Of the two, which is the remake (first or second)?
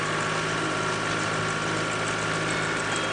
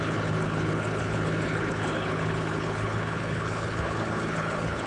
second